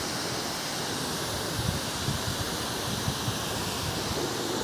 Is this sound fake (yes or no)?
no